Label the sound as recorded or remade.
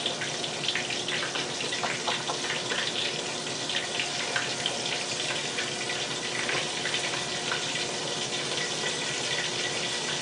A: recorded